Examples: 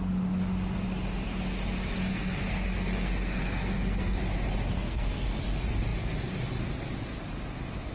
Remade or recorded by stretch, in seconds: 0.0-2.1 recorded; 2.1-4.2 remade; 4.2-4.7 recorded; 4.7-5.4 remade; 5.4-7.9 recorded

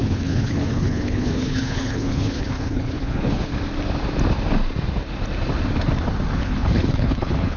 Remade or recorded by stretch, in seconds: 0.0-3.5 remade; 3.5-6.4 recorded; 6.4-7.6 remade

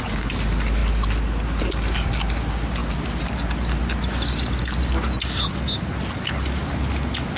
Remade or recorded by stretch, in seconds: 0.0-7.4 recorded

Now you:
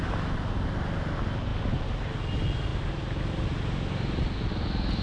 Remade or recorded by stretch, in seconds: 0.0-5.0 recorded

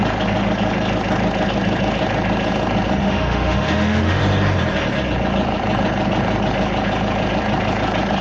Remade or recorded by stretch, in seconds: 0.0-3.0 recorded; 3.0-4.2 remade; 4.2-8.2 recorded

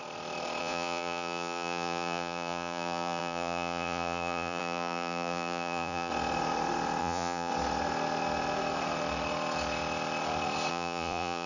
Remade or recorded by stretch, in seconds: 0.0-0.6 recorded; 0.6-6.1 remade; 6.1-7.0 recorded; 7.0-7.5 remade; 7.5-10.7 recorded; 10.7-11.5 remade

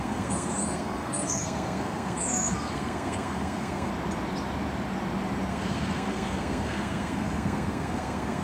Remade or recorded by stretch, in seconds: 0.0-3.9 remade; 3.9-5.5 recorded; 5.5-8.4 remade